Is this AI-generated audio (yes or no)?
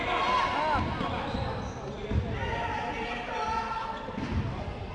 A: no